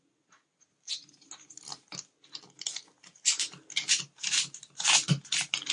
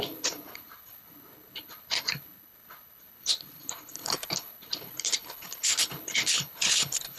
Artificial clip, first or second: second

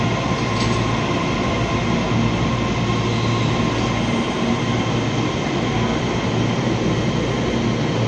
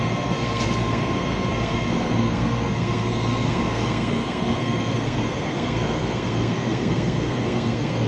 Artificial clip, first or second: second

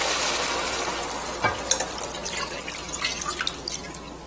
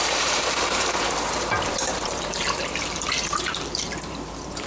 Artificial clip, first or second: second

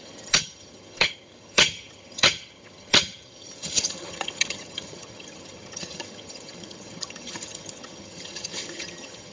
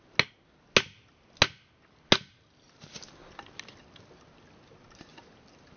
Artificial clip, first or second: first